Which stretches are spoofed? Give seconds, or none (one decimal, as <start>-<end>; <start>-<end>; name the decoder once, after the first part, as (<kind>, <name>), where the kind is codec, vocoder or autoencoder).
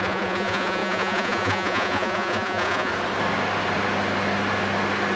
0.0-2.9 (vocoder, Vocos)